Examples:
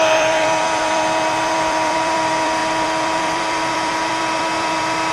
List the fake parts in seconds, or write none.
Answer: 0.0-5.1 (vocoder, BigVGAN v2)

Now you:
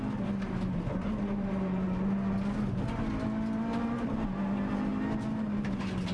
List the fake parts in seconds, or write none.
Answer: none

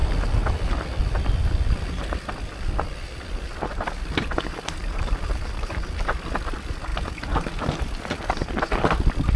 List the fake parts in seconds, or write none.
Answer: 0.0-6.9 (vocoder, BigVGAN v2); 9.0-9.4

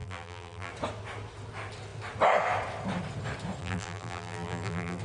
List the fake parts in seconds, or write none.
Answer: 0.0-0.7 (vocoder, BigVGAN v2); 3.6-5.0

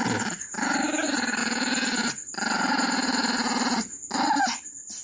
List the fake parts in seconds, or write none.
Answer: 0.0-5.0 (vocoder, BigVGAN v2)

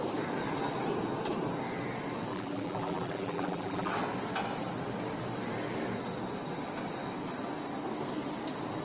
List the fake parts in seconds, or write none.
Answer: 2.3-3.9 (vocoder, BigVGAN v2)

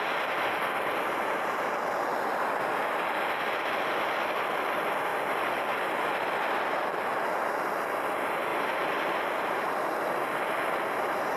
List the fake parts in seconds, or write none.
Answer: 2.1-2.8 (vocoder, BigVGAN v2); 8.5-10.7

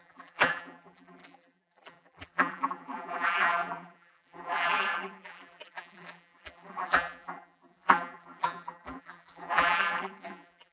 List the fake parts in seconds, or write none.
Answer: 0.0-10.7 (vocoder, BigVGAN v2)